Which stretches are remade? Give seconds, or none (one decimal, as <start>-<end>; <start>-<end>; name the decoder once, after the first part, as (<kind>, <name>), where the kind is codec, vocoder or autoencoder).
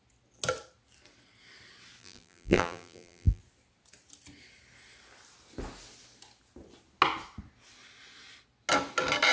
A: 2.0-3.4 (vocoder, BigVGAN v2)